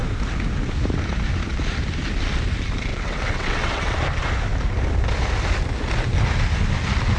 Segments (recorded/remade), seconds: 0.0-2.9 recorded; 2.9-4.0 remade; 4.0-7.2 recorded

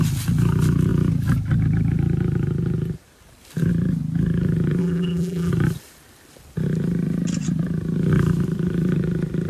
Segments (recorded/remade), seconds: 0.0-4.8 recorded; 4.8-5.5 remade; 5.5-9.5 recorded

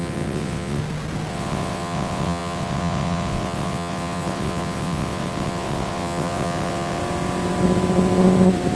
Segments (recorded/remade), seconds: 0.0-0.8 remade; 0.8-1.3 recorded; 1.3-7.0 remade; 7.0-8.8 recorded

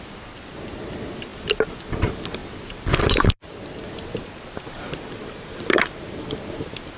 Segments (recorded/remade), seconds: 0.0-7.0 recorded